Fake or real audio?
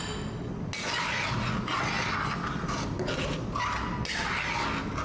real